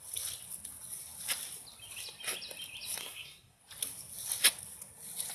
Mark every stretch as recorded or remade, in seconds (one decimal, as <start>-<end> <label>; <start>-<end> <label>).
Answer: 0.0-3.0 recorded; 3.0-3.6 remade; 3.6-5.3 recorded